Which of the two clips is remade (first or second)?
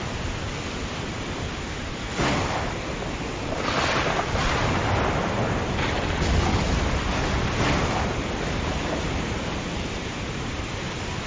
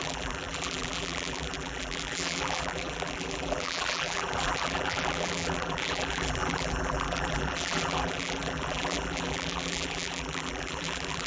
second